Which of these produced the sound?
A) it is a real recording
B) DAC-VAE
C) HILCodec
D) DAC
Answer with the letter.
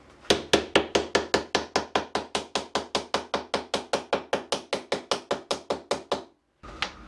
A